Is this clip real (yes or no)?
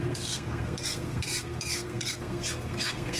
no